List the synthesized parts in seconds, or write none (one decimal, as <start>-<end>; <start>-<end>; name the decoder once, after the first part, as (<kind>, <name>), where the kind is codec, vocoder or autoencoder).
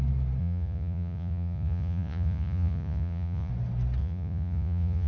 0.4-3.5 (vocoder, Vocos); 4.0-5.1